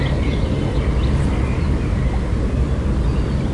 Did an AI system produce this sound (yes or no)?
no